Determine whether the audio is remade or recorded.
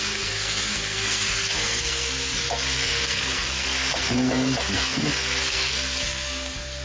remade